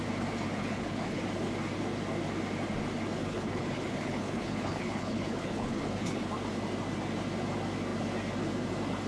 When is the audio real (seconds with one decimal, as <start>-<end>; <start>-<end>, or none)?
0.0-0.6; 1.2-3.2; 6.3-9.1